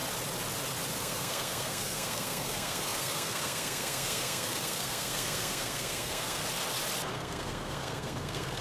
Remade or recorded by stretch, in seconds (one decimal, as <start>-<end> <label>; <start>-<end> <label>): 0.0-1.0 recorded; 1.0-6.4 remade; 6.4-7.1 recorded; 7.1-8.6 remade